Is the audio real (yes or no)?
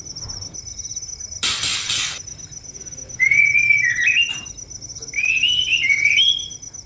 no